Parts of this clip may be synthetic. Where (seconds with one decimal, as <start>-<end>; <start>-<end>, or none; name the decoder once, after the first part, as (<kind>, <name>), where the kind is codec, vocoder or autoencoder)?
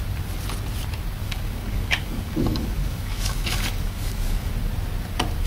1.2-4.5 (codec, DAC)